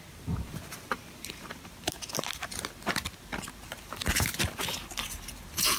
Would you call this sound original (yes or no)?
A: no